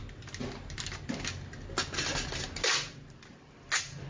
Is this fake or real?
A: real